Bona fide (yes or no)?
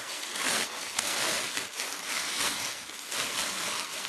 no